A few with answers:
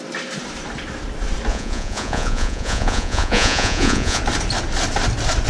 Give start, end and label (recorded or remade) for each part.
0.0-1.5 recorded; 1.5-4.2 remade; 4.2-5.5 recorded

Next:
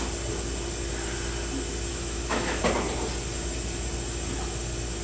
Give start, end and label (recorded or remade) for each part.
0.0-1.9 recorded; 1.9-2.6 remade; 2.6-5.0 recorded

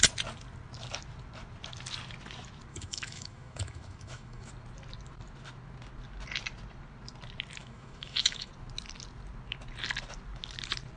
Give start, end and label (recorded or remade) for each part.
0.0-2.7 recorded; 2.7-4.5 remade; 4.5-7.6 recorded; 7.6-8.5 remade; 8.5-11.0 recorded